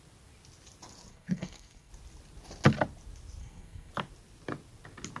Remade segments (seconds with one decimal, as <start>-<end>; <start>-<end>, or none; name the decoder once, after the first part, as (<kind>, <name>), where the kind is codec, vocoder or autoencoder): 1.1-1.9 (codec, SNAC); 3.4-3.9